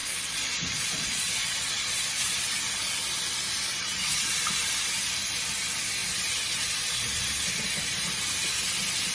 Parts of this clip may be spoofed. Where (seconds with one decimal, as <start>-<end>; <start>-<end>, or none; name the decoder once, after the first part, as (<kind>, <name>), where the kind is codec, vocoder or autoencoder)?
0.0-2.6 (vocoder, Vocos); 3.7-4.3